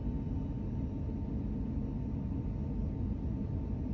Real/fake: real